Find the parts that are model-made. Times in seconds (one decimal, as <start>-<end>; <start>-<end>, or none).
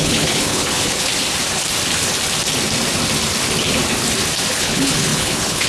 0.0-1.1; 4.5-5.7